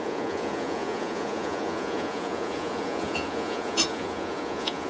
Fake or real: fake